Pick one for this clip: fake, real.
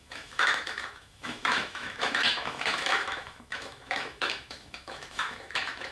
fake